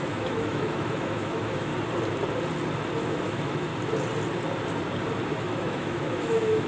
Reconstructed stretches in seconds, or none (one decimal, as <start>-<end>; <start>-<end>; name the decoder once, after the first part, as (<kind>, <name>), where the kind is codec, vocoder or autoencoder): 0.0-1.7 (autoencoder, DAC-VAE); 3.0-3.7; 5.3-6.7